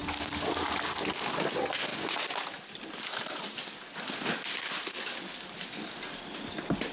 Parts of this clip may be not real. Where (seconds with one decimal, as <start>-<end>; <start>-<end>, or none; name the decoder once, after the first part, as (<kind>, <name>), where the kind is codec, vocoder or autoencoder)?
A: none